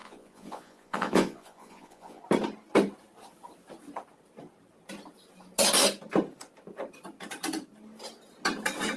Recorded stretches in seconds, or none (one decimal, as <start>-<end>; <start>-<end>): 2.2-9.0